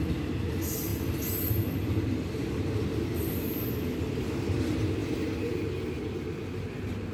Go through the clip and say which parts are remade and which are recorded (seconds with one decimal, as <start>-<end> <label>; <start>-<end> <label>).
0.0-0.9 recorded; 0.9-3.7 remade; 3.7-5.0 recorded; 5.0-5.6 remade; 5.6-7.1 recorded